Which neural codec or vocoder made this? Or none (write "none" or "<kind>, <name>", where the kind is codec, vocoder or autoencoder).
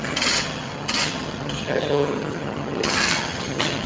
vocoder, HiFi-GAN